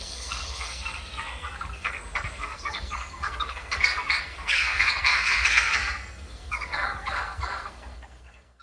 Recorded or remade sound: remade